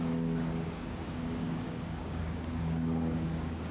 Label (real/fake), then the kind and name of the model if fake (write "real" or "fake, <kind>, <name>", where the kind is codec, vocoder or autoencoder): fake, codec, DAC